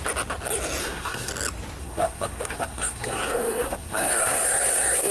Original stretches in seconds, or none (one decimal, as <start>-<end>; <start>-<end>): 0.0-0.8; 1.3-1.8